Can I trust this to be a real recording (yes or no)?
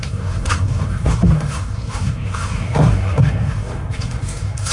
no